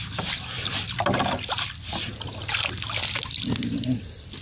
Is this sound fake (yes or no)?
no